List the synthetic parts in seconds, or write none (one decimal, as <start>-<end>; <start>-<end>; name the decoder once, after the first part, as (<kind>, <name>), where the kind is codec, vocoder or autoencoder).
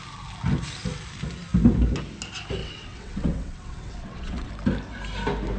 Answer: 2.6-4.5 (vocoder, WaveNeXt)